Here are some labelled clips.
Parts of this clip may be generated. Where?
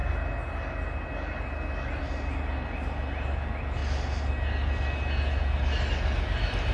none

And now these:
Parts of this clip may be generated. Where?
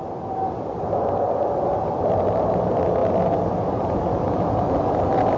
none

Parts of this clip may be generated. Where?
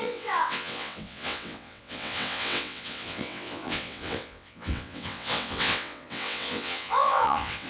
0.0-7.7 (vocoder, WaveNeXt)